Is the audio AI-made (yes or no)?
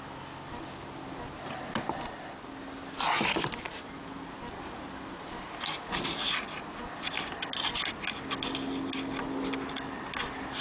no